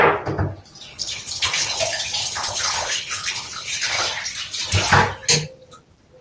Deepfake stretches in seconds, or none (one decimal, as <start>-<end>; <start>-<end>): 0.9-1.8; 2.2-4.0

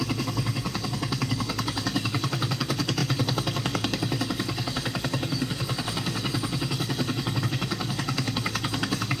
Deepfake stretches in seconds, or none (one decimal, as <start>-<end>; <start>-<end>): 0.0-9.2

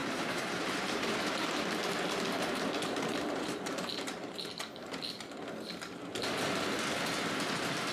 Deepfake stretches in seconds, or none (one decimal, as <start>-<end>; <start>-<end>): 0.0-1.8; 2.3-4.6

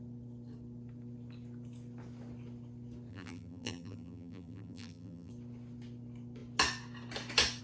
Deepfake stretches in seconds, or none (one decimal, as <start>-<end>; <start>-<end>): 3.1-5.3